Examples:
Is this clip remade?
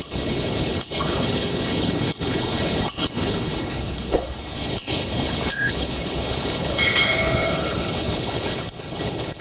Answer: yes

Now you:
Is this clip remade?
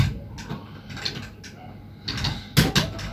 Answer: no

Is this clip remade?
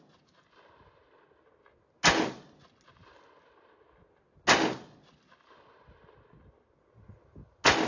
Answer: no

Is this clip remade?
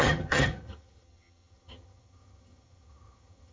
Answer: yes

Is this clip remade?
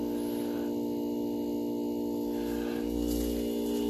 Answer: no